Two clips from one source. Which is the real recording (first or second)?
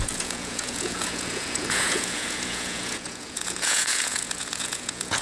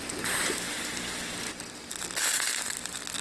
second